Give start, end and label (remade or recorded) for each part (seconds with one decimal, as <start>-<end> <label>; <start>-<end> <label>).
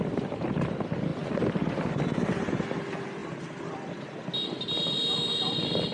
0.0-5.9 recorded